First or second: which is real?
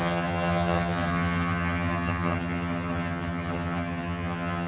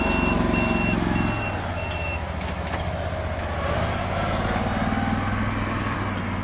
second